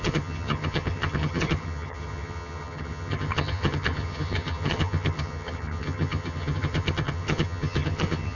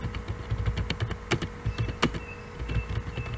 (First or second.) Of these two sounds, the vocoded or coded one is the first